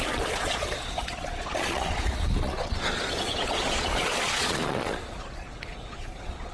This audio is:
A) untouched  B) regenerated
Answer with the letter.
B